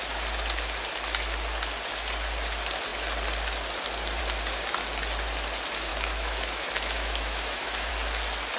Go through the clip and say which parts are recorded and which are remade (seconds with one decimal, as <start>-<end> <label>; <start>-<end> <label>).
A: 0.0-5.9 recorded; 5.9-7.9 remade; 7.9-8.6 recorded

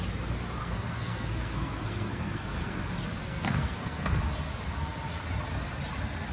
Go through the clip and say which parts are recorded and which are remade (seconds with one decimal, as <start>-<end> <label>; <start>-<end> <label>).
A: 0.0-0.6 recorded; 0.6-2.8 remade; 2.8-3.2 recorded; 3.2-4.2 remade; 4.2-6.3 recorded

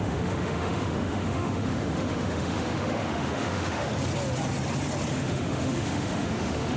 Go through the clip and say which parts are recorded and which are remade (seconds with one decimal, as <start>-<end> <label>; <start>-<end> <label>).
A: 0.0-3.9 remade; 3.9-5.1 recorded; 5.1-6.8 remade

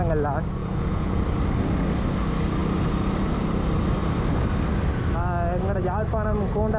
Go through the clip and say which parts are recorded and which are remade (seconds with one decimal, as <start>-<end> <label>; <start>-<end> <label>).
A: 0.0-0.6 recorded; 0.6-1.2 remade; 1.2-6.8 recorded

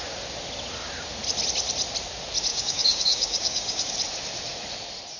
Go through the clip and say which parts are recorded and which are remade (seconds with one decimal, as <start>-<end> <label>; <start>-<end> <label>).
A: 0.0-2.5 recorded; 2.5-3.9 remade; 3.9-5.2 recorded

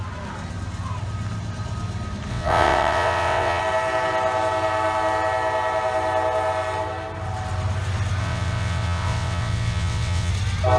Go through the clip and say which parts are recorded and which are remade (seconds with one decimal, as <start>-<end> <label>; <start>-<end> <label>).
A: 0.0-2.3 recorded; 2.3-3.6 remade; 3.6-8.2 recorded; 8.2-10.3 remade; 10.3-10.8 recorded

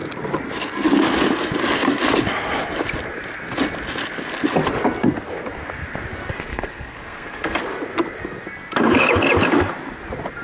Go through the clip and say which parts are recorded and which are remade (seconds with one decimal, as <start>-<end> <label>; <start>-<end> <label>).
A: 0.0-6.5 recorded; 6.5-7.6 remade; 7.6-10.4 recorded

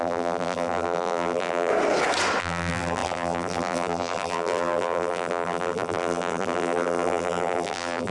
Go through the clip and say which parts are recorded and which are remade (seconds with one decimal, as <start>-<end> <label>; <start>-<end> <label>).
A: 0.0-1.7 remade; 1.7-2.4 recorded; 2.4-8.1 remade